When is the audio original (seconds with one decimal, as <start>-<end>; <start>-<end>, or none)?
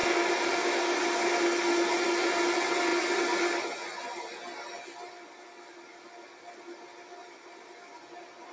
0.0-8.5